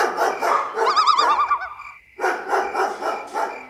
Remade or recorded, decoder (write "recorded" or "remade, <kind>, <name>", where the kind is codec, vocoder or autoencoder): recorded